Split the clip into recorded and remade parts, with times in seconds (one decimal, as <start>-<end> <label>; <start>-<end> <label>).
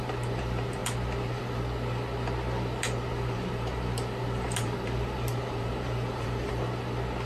0.0-3.1 recorded; 3.1-6.5 remade; 6.5-7.3 recorded